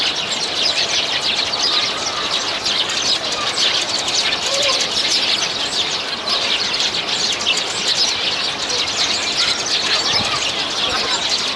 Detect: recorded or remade recorded